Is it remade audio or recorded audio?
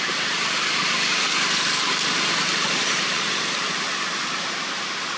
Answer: recorded